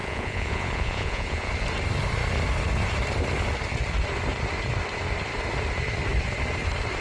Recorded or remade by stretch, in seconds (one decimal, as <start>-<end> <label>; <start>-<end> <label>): 0.0-1.5 remade; 1.5-7.0 recorded